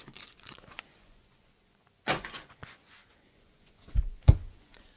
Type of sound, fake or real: fake